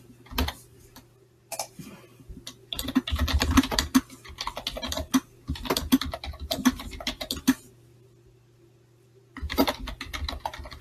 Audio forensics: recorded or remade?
recorded